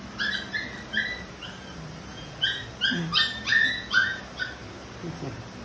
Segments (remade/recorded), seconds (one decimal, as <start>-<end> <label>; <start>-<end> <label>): 0.0-2.1 recorded; 2.1-2.6 remade; 2.6-3.5 recorded; 3.5-4.2 remade; 4.2-5.6 recorded